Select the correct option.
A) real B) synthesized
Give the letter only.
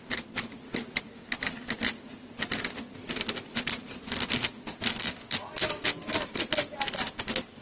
A